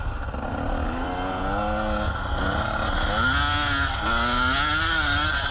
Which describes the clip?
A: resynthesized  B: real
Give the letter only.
B